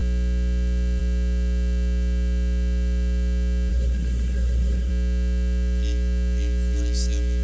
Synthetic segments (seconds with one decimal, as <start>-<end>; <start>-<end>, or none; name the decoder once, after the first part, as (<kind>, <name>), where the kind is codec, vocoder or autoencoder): 3.7-4.9 (codec, SNAC)